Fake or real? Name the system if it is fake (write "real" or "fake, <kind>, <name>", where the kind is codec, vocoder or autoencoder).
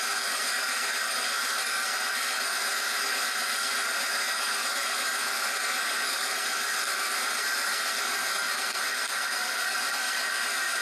fake, codec, SNAC